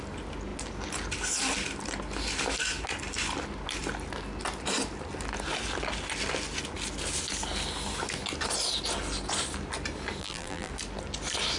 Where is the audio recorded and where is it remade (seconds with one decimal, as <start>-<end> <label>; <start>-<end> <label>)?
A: 0.0-10.2 recorded; 10.2-10.7 remade; 10.7-11.6 recorded